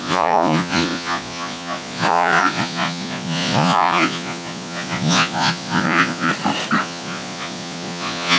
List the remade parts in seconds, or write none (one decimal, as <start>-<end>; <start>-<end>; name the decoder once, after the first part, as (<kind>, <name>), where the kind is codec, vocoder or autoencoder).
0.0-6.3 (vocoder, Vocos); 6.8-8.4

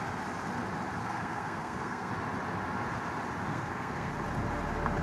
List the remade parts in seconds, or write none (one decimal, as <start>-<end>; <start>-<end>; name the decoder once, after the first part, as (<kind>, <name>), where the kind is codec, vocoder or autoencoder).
1.0-2.1 (codec, SNAC); 3.5-4.1

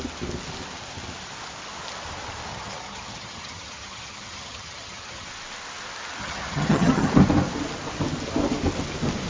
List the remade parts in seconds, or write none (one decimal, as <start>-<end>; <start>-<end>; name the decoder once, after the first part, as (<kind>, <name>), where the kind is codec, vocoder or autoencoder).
2.5-5.3 (vocoder, HiFi-GAN); 6.2-7.1

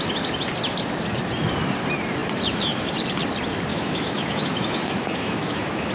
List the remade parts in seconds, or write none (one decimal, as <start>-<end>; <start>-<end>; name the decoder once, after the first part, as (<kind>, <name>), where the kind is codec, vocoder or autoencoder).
3.7-5.9 (autoencoder, DAC-VAE)